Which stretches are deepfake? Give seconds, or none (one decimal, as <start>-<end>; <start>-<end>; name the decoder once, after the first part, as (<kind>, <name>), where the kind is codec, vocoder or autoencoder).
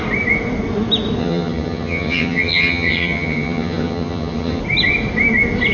1.2-4.6 (vocoder, HiFi-GAN)